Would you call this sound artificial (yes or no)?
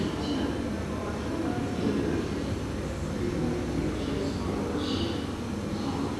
no